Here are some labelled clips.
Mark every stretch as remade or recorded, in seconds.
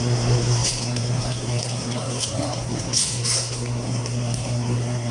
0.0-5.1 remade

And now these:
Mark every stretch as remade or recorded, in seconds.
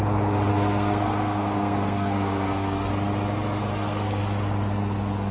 0.0-0.5 recorded; 0.5-2.9 remade; 2.9-3.6 recorded; 3.6-4.2 remade; 4.2-5.3 recorded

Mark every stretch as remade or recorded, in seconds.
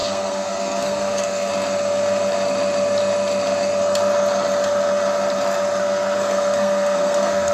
0.0-1.5 remade; 1.5-5.8 recorded; 5.8-7.5 remade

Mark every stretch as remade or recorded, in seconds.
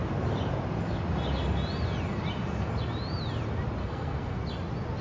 0.0-3.8 recorded; 3.8-4.4 remade; 4.4-5.0 recorded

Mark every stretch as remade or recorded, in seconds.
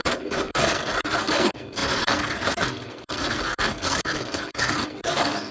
0.0-5.5 remade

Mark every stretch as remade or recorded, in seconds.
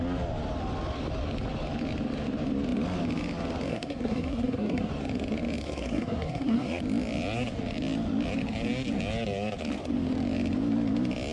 0.0-3.7 recorded; 3.7-4.9 remade; 4.9-5.6 recorded; 5.6-6.8 remade; 6.8-11.3 recorded